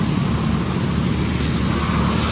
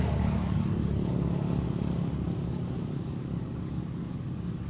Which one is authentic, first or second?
first